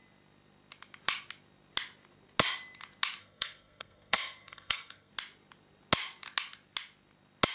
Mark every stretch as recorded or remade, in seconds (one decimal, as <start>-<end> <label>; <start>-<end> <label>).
0.0-3.2 recorded; 3.2-5.1 remade; 5.1-7.5 recorded